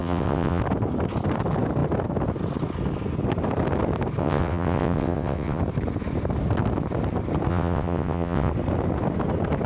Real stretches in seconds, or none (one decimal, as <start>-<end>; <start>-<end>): 0.6-4.2; 5.6-7.5; 8.5-9.7